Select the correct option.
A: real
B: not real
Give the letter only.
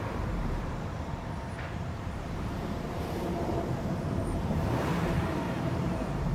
B